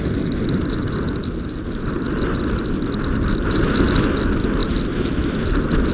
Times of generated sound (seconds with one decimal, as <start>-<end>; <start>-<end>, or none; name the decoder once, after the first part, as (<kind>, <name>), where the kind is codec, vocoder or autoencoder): none